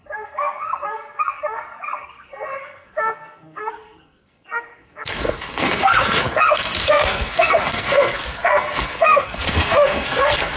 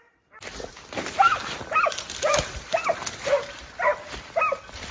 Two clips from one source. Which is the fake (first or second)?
first